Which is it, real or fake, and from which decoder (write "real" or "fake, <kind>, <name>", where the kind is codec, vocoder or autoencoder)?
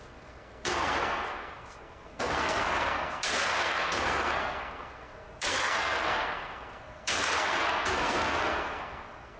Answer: fake, codec, SNAC